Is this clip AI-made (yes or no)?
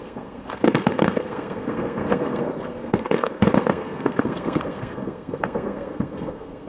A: yes